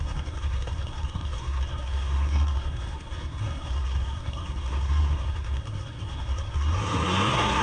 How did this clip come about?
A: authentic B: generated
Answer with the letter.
B